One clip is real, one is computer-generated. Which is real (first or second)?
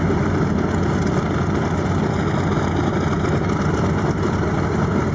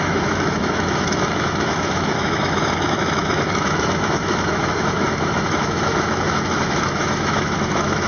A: first